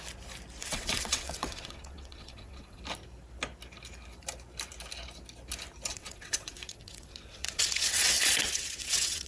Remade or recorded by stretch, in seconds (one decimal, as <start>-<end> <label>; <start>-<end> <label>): 0.0-0.6 recorded; 0.6-2.8 remade; 2.8-5.9 recorded; 5.9-9.3 remade